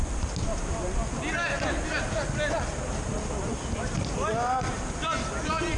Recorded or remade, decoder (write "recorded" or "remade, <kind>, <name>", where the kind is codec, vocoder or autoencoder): recorded